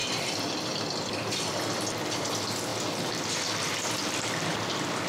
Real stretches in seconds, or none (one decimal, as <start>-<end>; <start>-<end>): 0.0-5.1